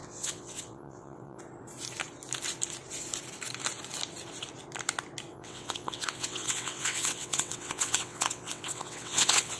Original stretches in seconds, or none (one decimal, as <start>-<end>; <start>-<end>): 1.4-5.3